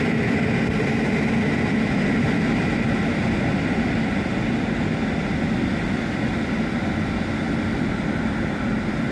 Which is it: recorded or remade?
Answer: recorded